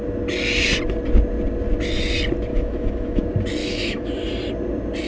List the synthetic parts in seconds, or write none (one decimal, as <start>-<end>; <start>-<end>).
2.5-3.2; 3.6-4.1

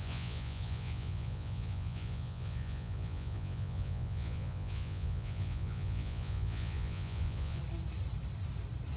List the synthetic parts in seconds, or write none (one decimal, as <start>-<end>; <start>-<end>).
0.0-7.6

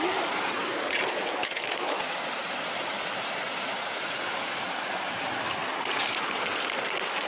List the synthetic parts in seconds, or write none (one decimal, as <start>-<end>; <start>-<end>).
1.4-2.0

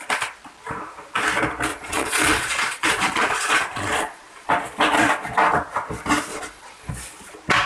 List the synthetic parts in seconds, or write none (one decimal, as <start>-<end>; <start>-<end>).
1.7-4.5; 6.3-6.9